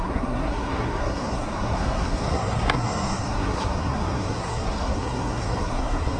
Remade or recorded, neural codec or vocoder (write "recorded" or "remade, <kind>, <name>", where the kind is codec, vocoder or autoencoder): remade, codec, SNAC